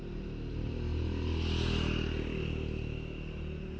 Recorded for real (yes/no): yes